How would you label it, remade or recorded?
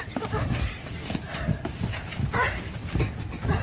recorded